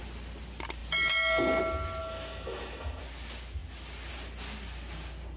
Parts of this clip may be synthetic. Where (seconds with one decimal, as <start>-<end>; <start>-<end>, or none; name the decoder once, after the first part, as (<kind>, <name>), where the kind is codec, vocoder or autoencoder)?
2.0-3.0 (autoencoder, DAC-VAE)

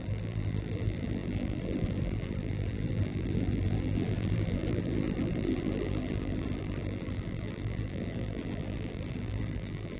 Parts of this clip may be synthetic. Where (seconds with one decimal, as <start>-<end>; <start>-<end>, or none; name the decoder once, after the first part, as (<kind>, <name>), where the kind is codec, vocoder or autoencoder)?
0.0-10.0 (vocoder, BigVGAN v2)

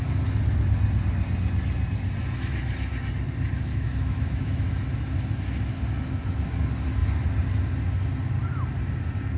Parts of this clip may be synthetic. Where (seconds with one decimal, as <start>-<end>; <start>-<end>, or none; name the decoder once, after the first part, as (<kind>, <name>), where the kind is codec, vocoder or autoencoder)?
3.7-4.6 (autoencoder, DAC-VAE)

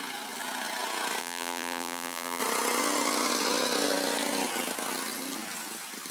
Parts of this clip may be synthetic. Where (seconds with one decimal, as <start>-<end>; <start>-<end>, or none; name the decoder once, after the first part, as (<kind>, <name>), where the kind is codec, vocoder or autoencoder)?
1.2-2.4 (vocoder, BigVGAN v2)

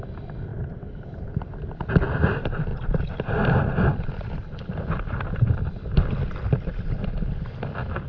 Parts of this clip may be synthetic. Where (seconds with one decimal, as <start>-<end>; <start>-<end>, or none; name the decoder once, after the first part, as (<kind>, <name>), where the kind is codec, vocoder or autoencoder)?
0.5-1.4 (vocoder, BigVGAN v2); 2.7-4.9

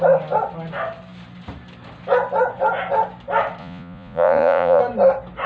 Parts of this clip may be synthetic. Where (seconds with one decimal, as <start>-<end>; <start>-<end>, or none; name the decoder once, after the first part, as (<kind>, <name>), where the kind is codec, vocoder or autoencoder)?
3.6-4.8 (vocoder, Vocos)

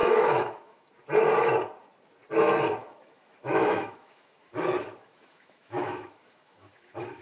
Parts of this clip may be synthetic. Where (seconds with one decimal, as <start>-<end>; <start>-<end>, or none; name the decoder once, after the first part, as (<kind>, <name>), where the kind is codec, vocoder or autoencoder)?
0.0-0.9 (autoencoder, DAC-VAE); 2.8-7.2

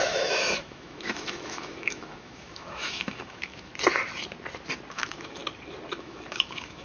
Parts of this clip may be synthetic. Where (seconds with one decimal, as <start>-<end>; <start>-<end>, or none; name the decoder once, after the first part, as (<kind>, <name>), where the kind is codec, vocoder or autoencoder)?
0.0-3.7 (autoencoder, DAC-VAE); 4.9-5.4; 5.9-6.8